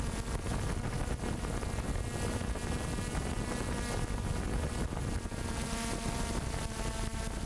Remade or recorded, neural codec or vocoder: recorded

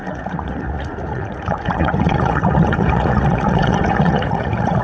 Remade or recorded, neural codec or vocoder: remade, vocoder, Vocos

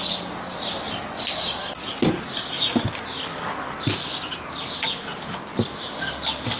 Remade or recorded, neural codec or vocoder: recorded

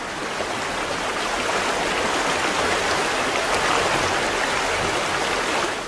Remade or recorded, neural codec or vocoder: recorded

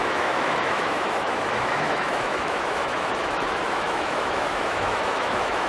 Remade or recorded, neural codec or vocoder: remade, autoencoder, DAC-VAE